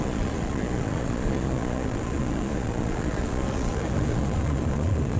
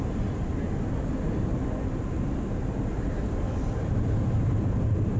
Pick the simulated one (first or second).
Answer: first